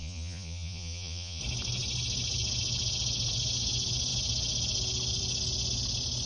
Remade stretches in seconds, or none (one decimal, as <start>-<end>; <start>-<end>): 0.0-1.4